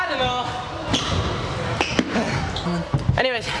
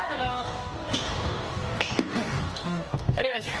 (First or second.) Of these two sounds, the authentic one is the first